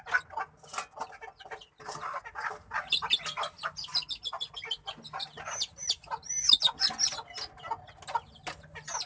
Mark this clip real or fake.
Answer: real